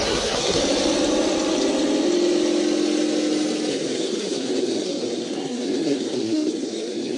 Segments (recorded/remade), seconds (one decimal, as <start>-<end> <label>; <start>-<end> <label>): 0.0-0.6 remade; 0.6-3.7 recorded; 3.7-7.2 remade